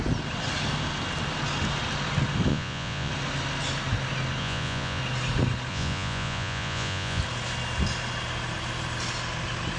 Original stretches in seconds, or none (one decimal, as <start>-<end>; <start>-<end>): 0.0-2.5; 3.1-4.4; 5.0-5.7; 7.2-9.8